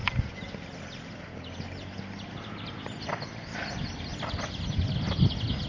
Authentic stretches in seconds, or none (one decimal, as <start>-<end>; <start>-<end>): 0.0-5.7